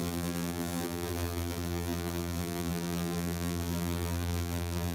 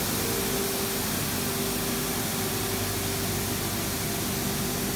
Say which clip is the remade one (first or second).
first